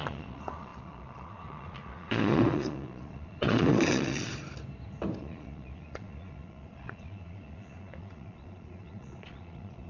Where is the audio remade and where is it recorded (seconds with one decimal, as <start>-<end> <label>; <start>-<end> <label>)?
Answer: 0.0-4.3 remade; 4.3-5.2 recorded; 5.2-9.9 remade